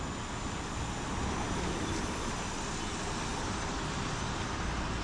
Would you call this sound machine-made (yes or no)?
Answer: no